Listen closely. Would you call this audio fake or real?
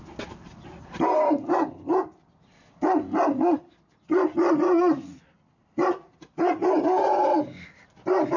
real